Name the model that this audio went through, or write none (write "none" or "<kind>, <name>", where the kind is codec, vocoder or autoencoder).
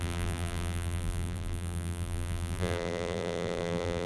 vocoder, BigVGAN v2